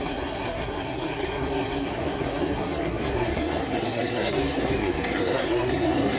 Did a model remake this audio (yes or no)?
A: yes